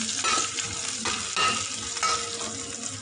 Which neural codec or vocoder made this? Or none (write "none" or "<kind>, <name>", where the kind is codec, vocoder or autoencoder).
none